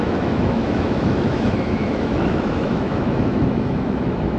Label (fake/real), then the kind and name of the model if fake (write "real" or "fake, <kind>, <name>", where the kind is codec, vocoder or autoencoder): fake, autoencoder, DAC-VAE